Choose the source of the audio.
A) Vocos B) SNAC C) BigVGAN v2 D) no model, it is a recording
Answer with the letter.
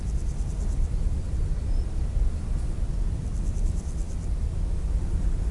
D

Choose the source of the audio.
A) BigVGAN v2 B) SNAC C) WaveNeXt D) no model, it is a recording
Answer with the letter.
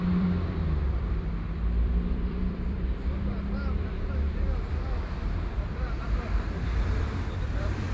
A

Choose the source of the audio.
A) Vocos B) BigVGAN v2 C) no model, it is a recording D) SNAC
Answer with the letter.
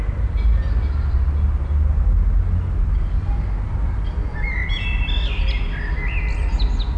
C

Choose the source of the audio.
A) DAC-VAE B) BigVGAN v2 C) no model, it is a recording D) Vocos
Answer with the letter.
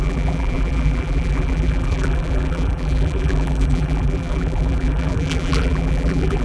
B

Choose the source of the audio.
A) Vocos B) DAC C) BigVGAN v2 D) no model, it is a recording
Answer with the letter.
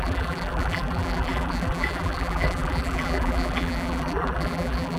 C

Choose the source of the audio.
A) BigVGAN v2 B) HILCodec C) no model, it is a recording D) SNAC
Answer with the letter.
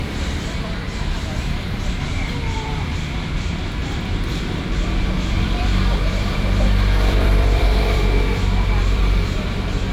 A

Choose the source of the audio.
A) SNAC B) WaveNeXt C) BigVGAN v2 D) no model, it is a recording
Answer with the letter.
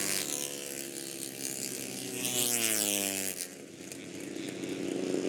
D